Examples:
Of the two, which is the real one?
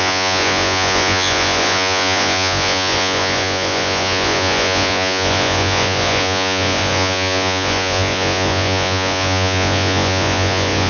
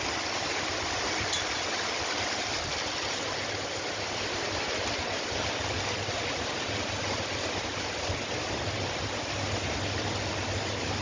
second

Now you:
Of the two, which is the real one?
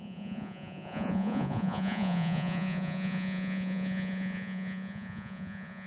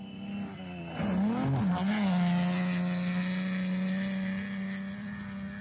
second